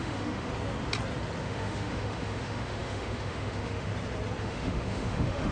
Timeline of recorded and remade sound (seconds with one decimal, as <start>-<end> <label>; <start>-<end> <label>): 0.0-0.5 remade; 0.5-1.4 recorded; 1.4-3.9 remade; 3.9-4.4 recorded; 4.4-5.5 remade